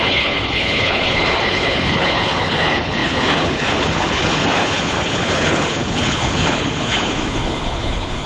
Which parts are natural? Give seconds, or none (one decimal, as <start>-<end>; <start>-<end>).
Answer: none